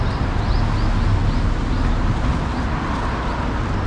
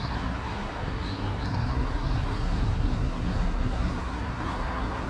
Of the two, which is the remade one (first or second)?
second